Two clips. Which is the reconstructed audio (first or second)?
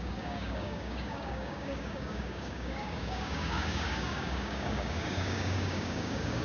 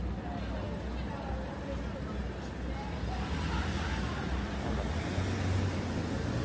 first